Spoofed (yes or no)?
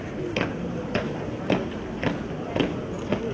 no